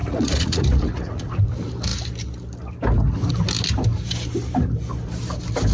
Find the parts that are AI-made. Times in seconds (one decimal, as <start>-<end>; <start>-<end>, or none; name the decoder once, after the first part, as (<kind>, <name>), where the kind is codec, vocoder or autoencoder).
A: 0.0-1.4 (vocoder, Vocos)